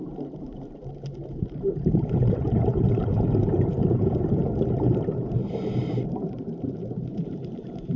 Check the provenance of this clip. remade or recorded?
remade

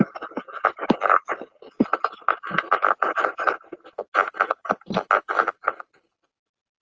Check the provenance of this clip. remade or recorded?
recorded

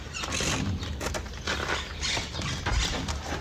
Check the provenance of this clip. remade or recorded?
recorded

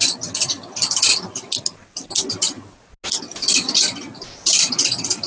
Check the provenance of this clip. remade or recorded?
recorded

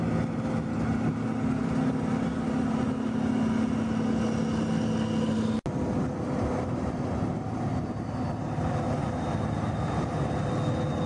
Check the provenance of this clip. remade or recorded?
recorded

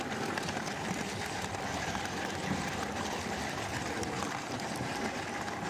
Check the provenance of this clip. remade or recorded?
recorded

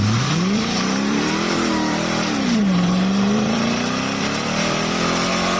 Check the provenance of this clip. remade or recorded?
remade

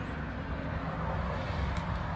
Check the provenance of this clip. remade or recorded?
recorded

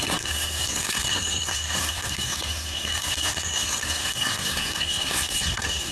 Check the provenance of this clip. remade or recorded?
remade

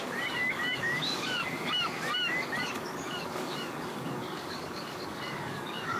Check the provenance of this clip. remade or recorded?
remade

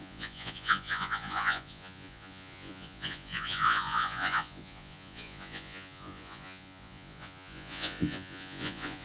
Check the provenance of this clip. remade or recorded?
remade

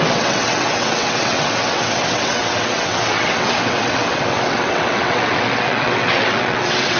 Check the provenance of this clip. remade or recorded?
remade